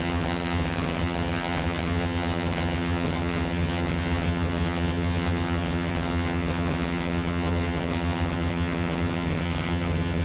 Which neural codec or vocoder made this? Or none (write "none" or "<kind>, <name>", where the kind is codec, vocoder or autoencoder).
vocoder, HiFi-GAN